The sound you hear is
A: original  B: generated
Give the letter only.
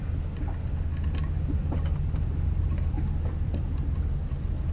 A